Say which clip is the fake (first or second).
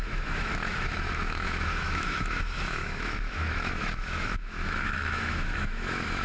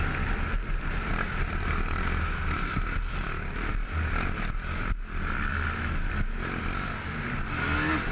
first